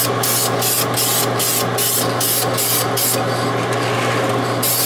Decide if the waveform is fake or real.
real